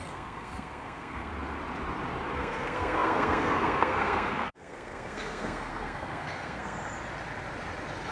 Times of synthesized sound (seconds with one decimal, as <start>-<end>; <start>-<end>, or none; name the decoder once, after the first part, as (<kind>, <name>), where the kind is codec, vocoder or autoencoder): 0.0-1.3 (codec, SNAC); 2.3-6.8